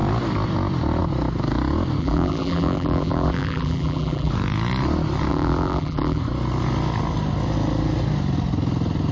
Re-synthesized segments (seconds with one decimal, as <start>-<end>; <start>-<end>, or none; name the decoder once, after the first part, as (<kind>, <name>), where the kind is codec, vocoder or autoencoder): 2.0-4.3 (vocoder, BigVGAN v2); 5.3-6.2

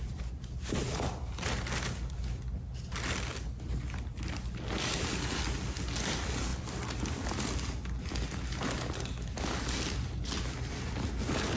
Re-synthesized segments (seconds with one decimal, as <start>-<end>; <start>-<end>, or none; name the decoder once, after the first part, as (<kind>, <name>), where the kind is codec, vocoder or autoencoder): none

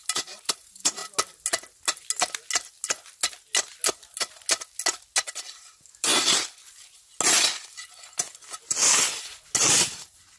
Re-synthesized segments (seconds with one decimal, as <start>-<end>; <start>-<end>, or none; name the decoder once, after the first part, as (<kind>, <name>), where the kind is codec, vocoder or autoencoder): 0.0-1.0 (vocoder, BigVGAN v2); 5.5-6.1; 9.8-10.4

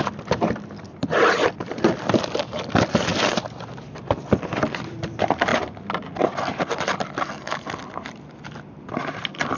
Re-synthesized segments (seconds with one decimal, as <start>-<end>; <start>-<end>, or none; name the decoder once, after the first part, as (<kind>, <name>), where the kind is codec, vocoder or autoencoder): 0.0-3.1 (vocoder, BigVGAN v2); 4.9-5.5; 8.4-9.6

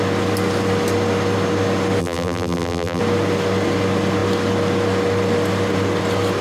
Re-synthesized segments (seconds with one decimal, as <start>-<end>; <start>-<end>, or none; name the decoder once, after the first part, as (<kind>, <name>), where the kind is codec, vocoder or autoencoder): 2.0-3.0 (vocoder, BigVGAN v2)